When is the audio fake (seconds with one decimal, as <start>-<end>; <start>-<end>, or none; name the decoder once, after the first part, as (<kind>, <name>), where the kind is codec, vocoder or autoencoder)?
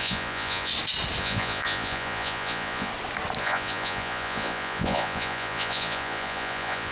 0.0-0.7 (vocoder, Vocos); 1.2-2.9; 3.4-6.9